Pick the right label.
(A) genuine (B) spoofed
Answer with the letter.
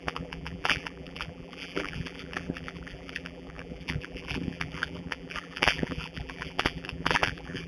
B